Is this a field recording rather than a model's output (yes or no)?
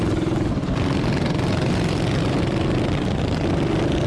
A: yes